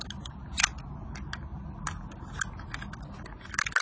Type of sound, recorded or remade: recorded